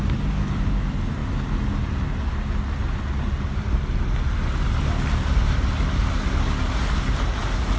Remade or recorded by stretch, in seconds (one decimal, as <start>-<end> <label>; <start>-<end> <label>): 0.0-7.8 recorded